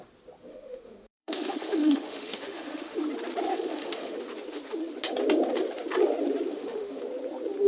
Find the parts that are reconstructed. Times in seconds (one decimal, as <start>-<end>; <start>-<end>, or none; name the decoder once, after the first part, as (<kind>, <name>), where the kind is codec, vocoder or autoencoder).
0.5-3.0 (autoencoder, DAC-VAE); 3.5-4.2; 6.5-7.0